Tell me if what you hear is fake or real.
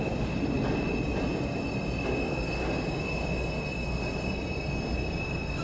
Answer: real